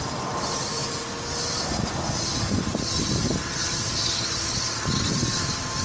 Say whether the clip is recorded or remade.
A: recorded